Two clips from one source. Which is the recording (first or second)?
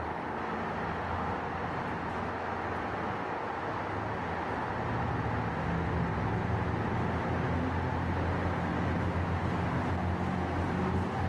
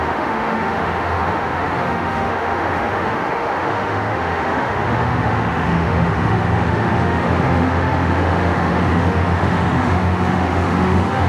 first